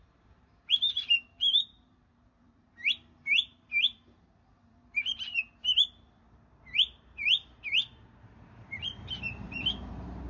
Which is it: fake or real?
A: fake